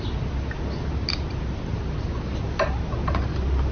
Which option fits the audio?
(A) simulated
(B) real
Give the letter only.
B